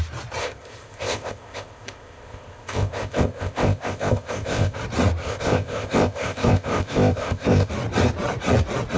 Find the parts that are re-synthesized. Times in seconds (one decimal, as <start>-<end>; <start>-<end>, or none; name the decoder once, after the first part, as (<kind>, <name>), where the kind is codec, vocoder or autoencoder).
0.4-4.8 (codec, ZipCodec); 5.2-7.7